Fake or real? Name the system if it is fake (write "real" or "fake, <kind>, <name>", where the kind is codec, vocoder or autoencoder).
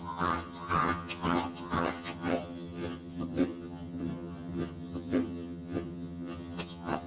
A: fake, vocoder, HiFi-GAN